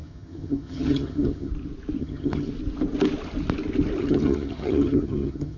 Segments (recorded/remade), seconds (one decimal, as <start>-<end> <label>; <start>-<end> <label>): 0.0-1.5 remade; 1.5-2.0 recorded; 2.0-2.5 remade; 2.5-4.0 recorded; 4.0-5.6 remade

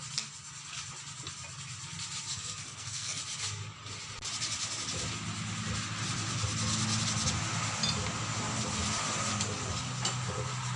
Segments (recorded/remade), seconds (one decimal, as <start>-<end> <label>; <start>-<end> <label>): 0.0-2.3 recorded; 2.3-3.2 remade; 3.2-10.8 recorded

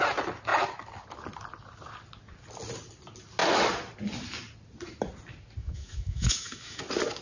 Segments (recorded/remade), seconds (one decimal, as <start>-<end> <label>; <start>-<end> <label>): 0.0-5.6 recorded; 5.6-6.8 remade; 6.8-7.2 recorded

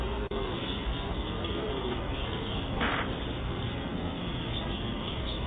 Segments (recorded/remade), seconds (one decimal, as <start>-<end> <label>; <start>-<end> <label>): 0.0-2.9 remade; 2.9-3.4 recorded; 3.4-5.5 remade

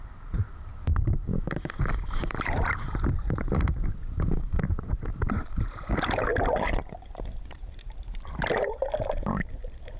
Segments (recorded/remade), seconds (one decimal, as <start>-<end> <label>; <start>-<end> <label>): 0.0-6.3 remade; 6.3-6.9 recorded; 6.9-10.0 remade

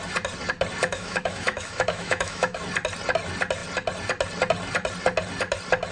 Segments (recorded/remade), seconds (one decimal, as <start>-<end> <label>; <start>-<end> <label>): 0.0-0.8 recorded; 0.8-2.6 remade; 2.6-5.9 recorded